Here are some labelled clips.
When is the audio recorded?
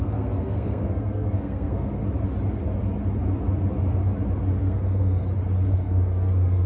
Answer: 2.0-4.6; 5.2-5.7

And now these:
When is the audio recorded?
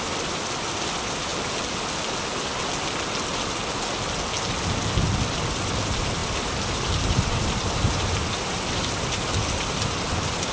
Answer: 1.3-5.2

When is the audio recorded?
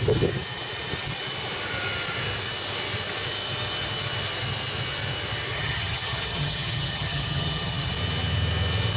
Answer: 0.0-5.5; 7.9-9.0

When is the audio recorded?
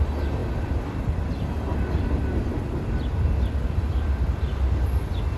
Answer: 0.0-5.4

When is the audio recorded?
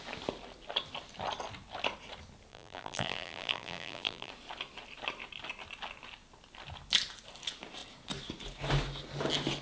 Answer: 0.0-2.5; 4.3-9.6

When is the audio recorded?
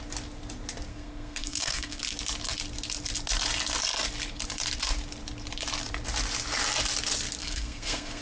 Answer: 0.0-0.9; 2.0-7.4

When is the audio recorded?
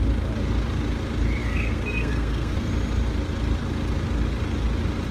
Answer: 0.0-1.4; 2.7-5.1